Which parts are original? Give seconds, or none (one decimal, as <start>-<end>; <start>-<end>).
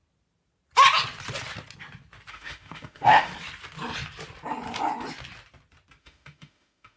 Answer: 0.0-2.3; 3.3-6.0